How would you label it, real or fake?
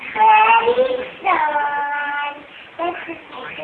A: real